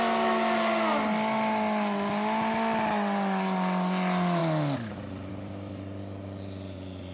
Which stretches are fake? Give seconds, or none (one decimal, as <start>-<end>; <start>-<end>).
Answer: none